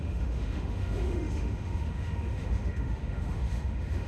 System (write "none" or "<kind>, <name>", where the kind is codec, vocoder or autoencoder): autoencoder, DAC-VAE